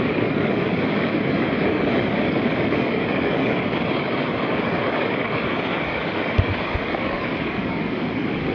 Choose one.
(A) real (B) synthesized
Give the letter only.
B